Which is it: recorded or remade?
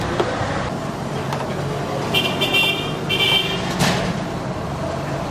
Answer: recorded